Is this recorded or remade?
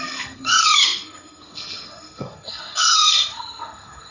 remade